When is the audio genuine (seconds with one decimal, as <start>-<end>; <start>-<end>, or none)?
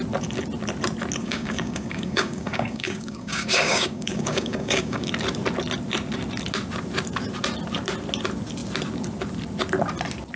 0.0-1.2; 5.1-10.4